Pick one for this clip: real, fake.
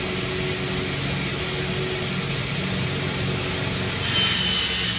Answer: real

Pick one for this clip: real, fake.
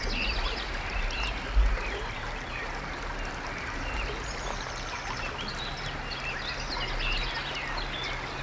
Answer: real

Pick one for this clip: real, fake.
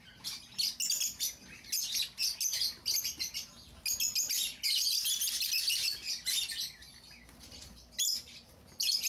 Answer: real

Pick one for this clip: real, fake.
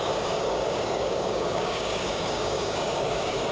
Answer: fake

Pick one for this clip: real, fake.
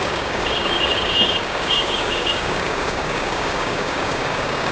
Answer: fake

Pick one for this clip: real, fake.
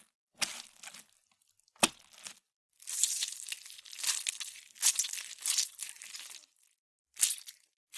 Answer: real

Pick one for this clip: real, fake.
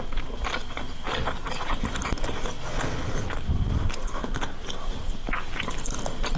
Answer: real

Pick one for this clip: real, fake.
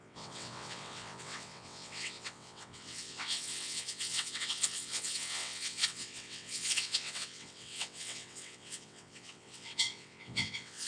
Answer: fake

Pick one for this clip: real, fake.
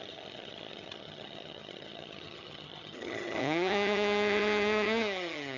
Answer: fake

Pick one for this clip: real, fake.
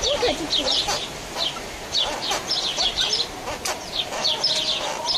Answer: real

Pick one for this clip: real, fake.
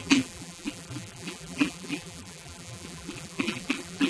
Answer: fake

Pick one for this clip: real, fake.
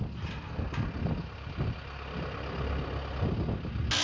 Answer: real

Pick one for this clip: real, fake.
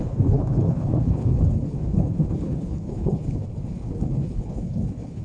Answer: fake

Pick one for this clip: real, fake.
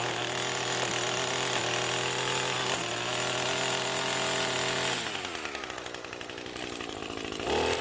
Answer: real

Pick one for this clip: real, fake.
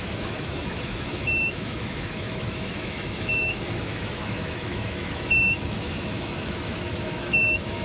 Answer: fake